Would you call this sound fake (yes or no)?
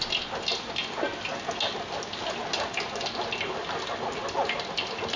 no